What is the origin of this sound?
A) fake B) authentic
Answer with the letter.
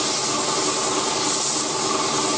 B